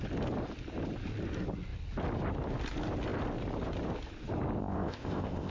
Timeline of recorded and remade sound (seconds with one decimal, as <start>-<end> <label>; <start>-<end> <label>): 0.0-4.6 recorded; 4.6-5.5 remade